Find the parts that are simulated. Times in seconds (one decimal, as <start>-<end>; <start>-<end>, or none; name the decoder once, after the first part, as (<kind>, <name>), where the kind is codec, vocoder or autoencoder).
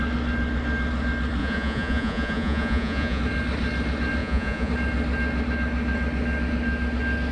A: 1.4-3.2 (vocoder, Vocos); 4.2-4.7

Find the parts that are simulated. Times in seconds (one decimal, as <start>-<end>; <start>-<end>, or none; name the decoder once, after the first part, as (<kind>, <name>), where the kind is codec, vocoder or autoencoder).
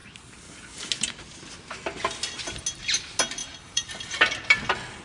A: 3.4-4.1 (vocoder, BigVGAN v2)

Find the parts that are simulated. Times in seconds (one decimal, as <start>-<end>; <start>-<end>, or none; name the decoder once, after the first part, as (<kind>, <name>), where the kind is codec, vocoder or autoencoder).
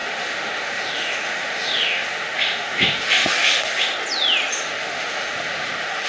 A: 0.0-3.9 (autoencoder, DAC-VAE); 4.5-6.1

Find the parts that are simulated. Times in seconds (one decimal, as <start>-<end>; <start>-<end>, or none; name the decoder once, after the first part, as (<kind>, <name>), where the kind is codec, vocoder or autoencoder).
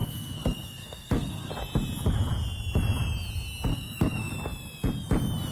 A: 0.0-1.5 (codec, SNAC); 3.7-4.3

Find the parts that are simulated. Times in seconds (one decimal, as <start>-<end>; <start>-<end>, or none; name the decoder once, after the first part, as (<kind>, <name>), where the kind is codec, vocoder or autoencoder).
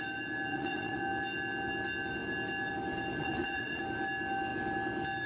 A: 0.5-1.0 (vocoder, Vocos); 3.2-3.8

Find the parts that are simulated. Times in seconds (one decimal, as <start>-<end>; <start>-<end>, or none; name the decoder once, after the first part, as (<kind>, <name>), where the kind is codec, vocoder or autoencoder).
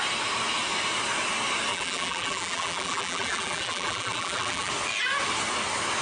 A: 1.7-4.7 (vocoder, BigVGAN v2)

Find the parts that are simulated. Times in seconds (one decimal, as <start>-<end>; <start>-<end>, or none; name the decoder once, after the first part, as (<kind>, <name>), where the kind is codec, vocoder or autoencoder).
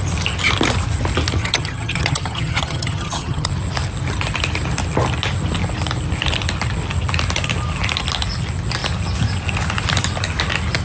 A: 1.4-3.5 (vocoder, HiFi-GAN)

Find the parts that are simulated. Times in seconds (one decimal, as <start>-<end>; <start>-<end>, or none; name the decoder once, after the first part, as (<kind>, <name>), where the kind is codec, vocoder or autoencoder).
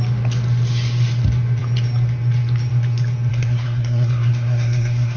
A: 3.3-5.2 (codec, SNAC)